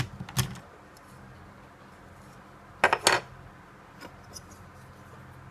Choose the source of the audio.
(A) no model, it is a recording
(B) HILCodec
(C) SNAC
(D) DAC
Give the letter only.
A